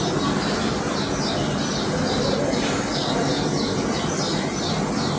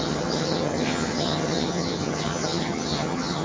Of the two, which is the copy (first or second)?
second